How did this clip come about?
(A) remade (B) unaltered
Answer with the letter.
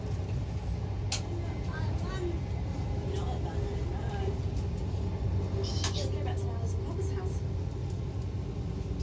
B